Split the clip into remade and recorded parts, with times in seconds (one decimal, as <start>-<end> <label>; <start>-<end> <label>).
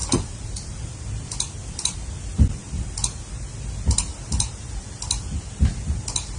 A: 0.0-2.2 remade; 2.2-6.4 recorded